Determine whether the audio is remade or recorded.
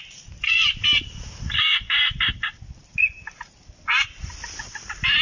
recorded